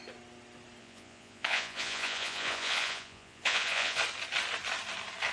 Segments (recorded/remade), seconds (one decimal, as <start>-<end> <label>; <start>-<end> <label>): 0.0-0.8 recorded; 0.8-4.0 remade; 4.0-5.3 recorded